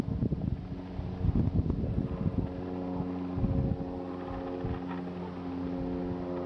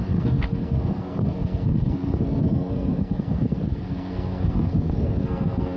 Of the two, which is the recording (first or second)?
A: first